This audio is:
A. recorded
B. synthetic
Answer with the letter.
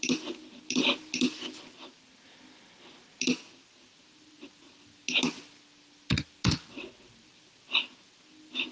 A